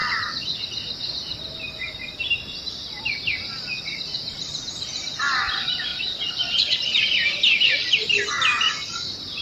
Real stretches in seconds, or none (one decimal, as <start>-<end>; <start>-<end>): 0.0-9.4